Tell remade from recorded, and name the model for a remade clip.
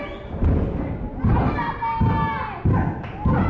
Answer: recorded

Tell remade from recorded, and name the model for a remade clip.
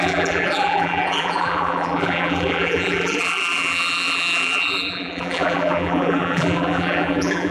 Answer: remade, vocoder, BigVGAN v2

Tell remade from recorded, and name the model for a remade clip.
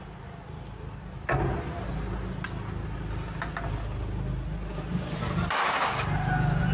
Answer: recorded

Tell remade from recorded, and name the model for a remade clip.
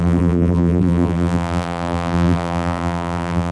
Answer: remade, vocoder, BigVGAN v2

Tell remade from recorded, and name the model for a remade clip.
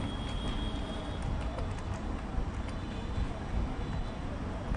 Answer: recorded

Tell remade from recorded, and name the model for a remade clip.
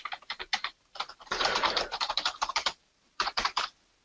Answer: remade, vocoder, BigVGAN v2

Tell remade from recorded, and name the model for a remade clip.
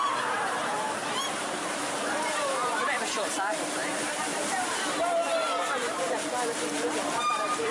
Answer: remade, vocoder, BigVGAN v2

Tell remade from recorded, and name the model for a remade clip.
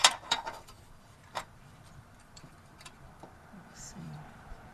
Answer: remade, vocoder, BigVGAN v2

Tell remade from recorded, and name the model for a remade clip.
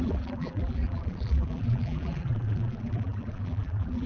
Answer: remade, vocoder, BigVGAN v2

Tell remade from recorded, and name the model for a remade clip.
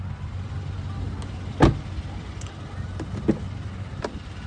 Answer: recorded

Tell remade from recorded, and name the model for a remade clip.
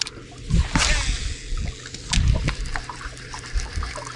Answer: recorded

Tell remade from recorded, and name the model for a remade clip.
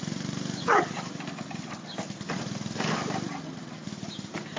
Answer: remade, vocoder, BigVGAN v2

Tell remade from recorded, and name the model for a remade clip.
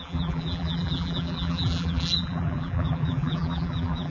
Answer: remade, vocoder, BigVGAN v2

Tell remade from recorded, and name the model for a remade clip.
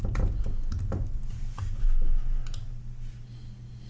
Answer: recorded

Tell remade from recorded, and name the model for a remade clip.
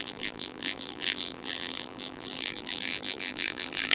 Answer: remade, vocoder, BigVGAN v2